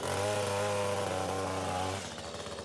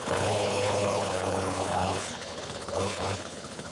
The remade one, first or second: second